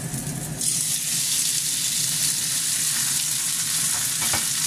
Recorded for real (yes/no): yes